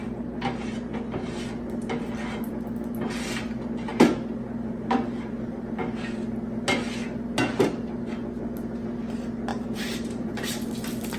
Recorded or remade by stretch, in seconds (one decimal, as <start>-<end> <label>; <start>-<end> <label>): 0.0-9.5 recorded; 9.5-10.6 remade; 10.6-11.2 recorded